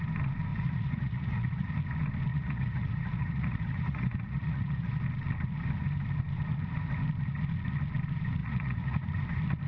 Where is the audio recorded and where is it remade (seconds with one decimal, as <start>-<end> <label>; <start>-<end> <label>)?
0.0-0.5 recorded; 0.5-1.7 remade; 1.7-2.3 recorded; 2.3-4.9 remade; 4.9-8.4 recorded; 8.4-9.1 remade; 9.1-9.7 recorded